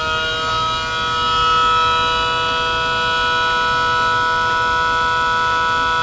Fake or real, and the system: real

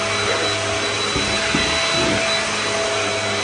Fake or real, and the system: real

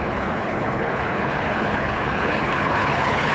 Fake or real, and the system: fake, codec, HILCodec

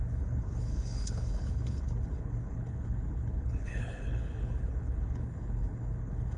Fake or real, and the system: fake, codec, HILCodec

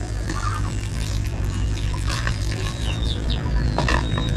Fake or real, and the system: fake, vocoder, BigVGAN v2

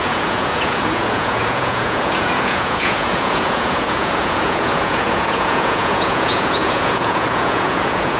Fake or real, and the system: fake, vocoder, Vocos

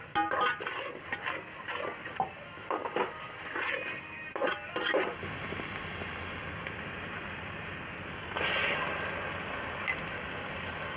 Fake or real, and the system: real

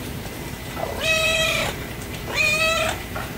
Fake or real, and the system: fake, vocoder, BigVGAN v2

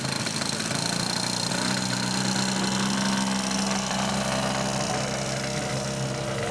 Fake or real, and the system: real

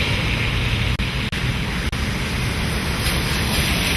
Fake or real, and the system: real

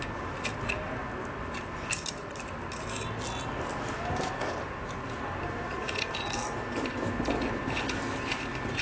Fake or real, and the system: real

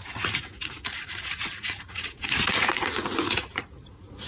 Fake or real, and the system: fake, vocoder, Vocos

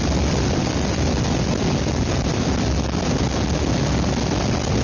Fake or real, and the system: real